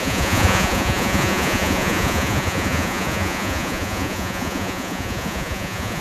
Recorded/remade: remade